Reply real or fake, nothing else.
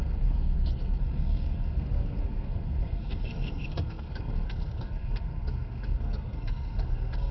fake